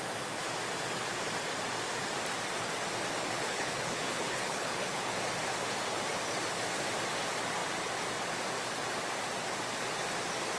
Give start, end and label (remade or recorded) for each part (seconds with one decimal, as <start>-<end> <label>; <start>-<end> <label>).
0.0-3.2 recorded; 3.2-5.1 remade; 5.1-10.6 recorded